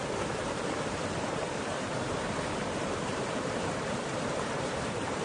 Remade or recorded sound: remade